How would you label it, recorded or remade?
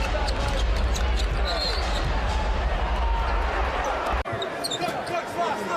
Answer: recorded